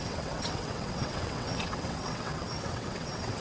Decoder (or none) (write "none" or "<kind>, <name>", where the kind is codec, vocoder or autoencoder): vocoder, WaveNeXt